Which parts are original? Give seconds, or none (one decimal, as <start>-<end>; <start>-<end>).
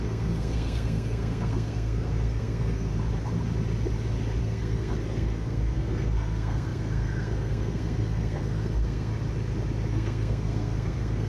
2.9-4.4; 9.1-9.9